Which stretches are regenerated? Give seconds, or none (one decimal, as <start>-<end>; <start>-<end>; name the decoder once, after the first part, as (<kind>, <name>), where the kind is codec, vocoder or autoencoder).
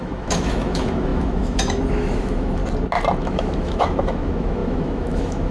0.0-2.6 (autoencoder, DAC-VAE); 3.2-5.5